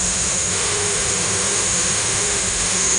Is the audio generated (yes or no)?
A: yes